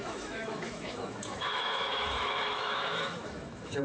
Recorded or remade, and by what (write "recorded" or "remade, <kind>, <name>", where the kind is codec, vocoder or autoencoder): remade, autoencoder, DAC-VAE